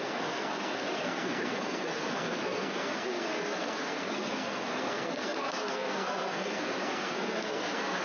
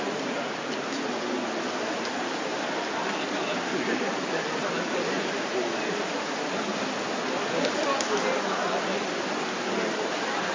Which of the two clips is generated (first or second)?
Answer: first